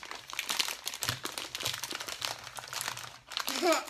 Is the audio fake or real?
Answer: fake